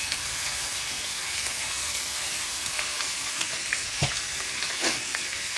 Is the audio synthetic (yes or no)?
yes